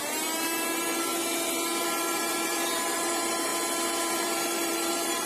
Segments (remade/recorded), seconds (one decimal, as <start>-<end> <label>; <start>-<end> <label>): 0.0-1.1 remade; 1.1-1.8 recorded; 1.8-3.5 remade; 3.5-4.1 recorded; 4.1-5.3 remade